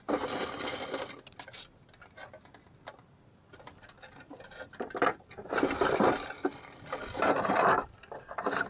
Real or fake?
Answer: real